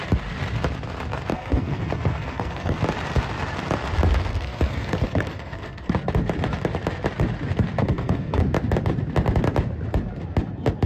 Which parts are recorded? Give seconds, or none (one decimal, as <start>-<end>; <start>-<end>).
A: 0.0-1.3; 2.8-4.3; 5.9-7.8; 8.4-10.9